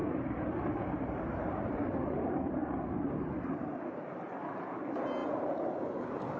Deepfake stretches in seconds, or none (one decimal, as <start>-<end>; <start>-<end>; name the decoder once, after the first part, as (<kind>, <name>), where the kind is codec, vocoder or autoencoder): 0.0-3.8 (vocoder, BigVGAN v2)